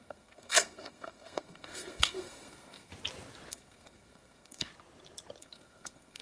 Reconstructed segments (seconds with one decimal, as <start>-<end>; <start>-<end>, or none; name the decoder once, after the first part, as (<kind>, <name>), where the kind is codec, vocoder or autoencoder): 0.0-2.9 (codec, SNAC); 3.5-4.7; 5.4-6.2